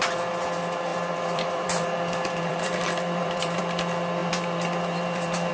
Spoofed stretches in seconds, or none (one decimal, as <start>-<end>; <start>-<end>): 0.9-3.6; 4.2-5.5